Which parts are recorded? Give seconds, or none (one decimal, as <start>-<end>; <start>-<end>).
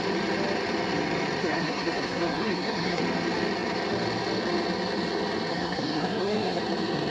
0.0-1.4; 3.0-5.5; 6.6-7.1